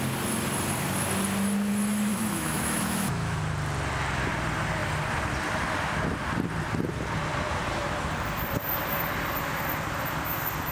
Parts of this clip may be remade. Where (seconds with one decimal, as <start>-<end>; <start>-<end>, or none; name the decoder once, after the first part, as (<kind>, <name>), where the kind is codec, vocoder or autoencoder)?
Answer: 2.1-3.4 (autoencoder, DAC-VAE)